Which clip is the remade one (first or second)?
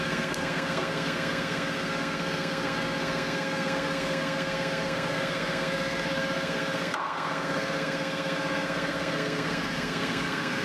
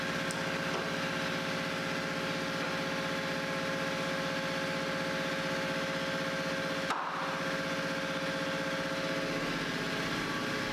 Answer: first